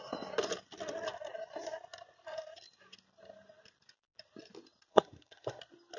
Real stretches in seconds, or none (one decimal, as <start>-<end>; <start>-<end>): 0.0-4.9; 5.6-6.0